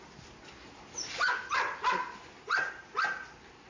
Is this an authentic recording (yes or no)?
yes